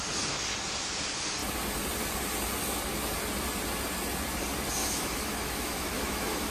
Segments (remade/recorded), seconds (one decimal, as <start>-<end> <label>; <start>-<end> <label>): 0.0-4.8 recorded; 4.8-6.5 remade